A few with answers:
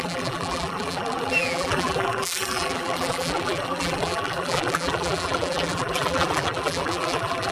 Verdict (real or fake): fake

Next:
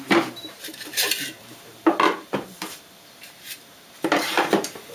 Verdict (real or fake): fake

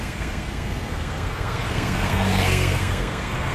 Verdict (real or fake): fake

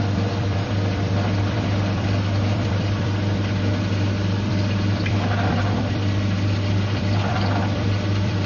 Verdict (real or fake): fake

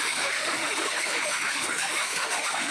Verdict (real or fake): fake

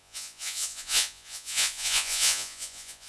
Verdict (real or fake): fake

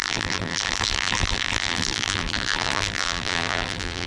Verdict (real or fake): fake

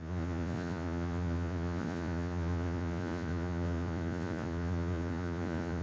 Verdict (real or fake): fake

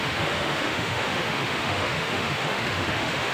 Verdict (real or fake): fake